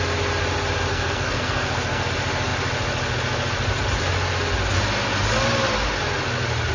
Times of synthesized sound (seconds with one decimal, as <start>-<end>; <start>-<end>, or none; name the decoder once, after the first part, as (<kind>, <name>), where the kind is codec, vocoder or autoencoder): 0.9-2.1 (codec, SNAC)